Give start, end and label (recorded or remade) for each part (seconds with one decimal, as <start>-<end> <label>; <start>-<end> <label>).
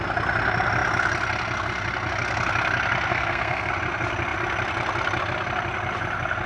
0.0-3.1 recorded; 3.1-3.7 remade; 3.7-6.5 recorded